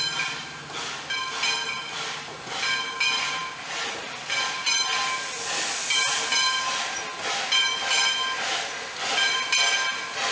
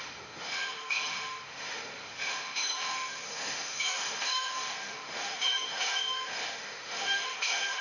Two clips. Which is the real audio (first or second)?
first